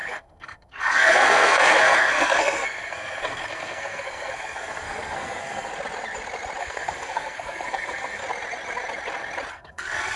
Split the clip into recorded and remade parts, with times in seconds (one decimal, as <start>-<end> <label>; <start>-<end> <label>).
0.0-5.7 remade; 5.7-6.6 recorded; 6.6-8.2 remade; 8.2-9.5 recorded; 9.5-10.2 remade